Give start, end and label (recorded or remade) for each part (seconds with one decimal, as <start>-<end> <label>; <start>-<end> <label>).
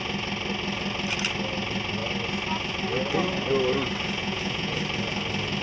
0.0-4.2 recorded; 4.2-4.8 remade; 4.8-5.6 recorded